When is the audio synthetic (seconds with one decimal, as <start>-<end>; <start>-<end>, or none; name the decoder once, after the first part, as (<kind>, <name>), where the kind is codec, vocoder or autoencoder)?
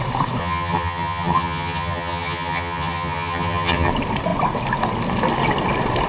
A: 0.4-3.9 (vocoder, HiFi-GAN)